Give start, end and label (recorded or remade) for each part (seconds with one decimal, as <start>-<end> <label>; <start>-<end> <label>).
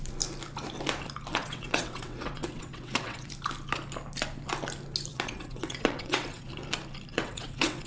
0.0-1.3 recorded; 1.3-3.3 remade; 3.3-5.1 recorded; 5.1-6.5 remade; 6.5-7.1 recorded; 7.1-7.9 remade